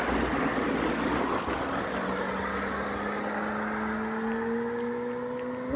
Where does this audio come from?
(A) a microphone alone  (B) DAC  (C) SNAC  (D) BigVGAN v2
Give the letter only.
A